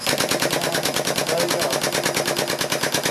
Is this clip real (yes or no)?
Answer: yes